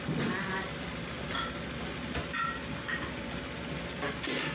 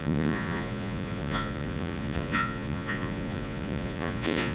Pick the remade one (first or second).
second